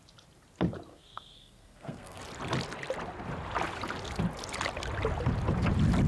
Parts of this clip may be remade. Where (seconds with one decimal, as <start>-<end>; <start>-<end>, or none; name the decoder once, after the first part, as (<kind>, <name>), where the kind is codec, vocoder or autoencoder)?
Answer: 0.9-2.2 (codec, SNAC)

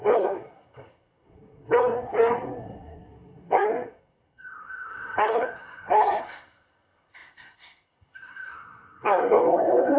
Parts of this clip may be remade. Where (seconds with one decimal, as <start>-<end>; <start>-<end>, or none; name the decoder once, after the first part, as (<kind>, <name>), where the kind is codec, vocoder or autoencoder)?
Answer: 0.0-10.0 (codec, SNAC)

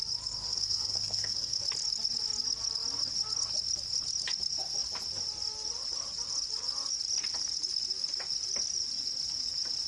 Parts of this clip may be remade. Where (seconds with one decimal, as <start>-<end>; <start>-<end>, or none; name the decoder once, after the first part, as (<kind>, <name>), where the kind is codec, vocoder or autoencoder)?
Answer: 0.4-1.6 (codec, SNAC)

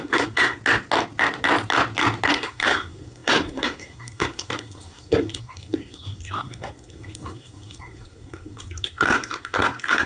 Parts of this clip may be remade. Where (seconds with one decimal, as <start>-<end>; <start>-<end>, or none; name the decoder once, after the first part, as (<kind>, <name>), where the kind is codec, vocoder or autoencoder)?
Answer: 0.0-0.6 (codec, SNAC); 2.3-10.1

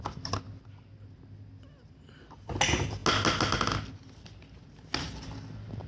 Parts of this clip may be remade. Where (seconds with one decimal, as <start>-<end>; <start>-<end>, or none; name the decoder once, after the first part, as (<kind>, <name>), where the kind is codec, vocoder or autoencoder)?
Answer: none

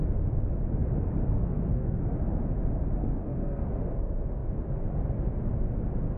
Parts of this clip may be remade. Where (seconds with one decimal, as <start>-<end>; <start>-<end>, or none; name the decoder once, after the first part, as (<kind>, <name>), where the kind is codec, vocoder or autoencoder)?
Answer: 1.2-2.0 (codec, SNAC); 3.0-3.7

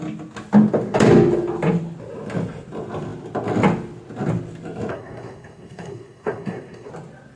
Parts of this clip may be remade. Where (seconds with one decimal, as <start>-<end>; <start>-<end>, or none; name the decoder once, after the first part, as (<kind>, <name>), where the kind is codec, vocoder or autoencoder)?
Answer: 4.9-6.9 (codec, SNAC)

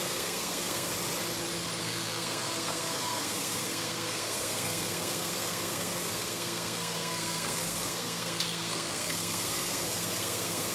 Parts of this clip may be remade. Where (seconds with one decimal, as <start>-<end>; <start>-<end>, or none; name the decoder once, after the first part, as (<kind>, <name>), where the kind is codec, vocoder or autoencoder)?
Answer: 0.0-0.9 (codec, SNAC); 1.8-10.7